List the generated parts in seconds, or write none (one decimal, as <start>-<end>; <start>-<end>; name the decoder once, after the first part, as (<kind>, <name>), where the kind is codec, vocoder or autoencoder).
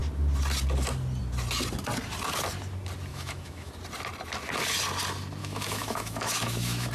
3.1-3.7 (autoencoder, DAC-VAE); 5.4-6.9